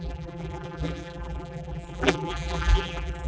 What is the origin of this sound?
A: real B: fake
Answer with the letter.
B